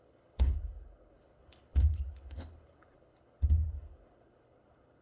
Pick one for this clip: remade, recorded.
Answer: remade